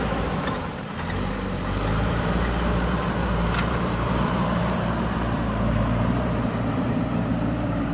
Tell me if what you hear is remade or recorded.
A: remade